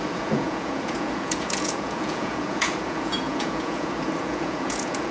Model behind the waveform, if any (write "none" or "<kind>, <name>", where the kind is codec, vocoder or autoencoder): vocoder, Vocos